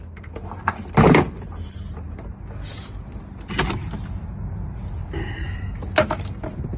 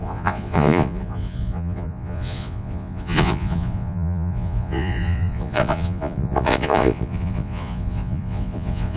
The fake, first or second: second